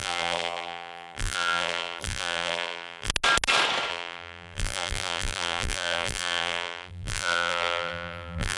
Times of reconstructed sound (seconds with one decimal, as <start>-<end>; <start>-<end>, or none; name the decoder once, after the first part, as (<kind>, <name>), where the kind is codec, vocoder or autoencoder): 0.0-3.1 (vocoder, BigVGAN v2); 3.9-8.6